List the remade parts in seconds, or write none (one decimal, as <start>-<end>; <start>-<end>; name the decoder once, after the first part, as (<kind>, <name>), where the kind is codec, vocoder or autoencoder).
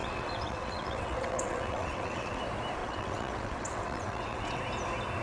0.0-2.4 (vocoder, WaveNeXt); 2.8-4.6